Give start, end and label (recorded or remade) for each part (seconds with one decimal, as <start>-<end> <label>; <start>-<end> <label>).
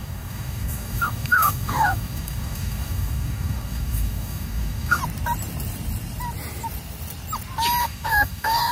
0.0-5.0 remade; 5.0-7.8 recorded; 7.8-8.7 remade